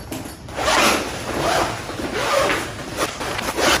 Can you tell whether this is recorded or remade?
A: recorded